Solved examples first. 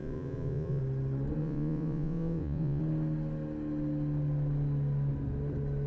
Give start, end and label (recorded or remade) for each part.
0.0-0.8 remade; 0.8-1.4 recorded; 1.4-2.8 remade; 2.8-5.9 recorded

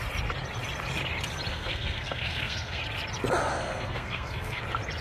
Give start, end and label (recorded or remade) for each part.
0.0-1.5 recorded; 1.5-2.8 remade; 2.8-3.5 recorded; 3.5-4.6 remade; 4.6-5.0 recorded

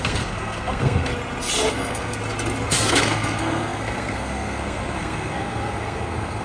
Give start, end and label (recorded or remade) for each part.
0.0-1.1 remade; 1.1-1.7 recorded; 1.7-2.2 remade; 2.2-2.9 recorded; 2.9-6.4 remade

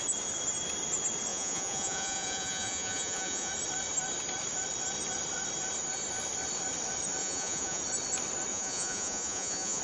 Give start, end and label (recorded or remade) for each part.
0.0-1.3 recorded; 1.3-3.5 remade; 3.5-7.2 recorded; 7.2-7.8 remade; 7.8-8.5 recorded; 8.5-9.8 remade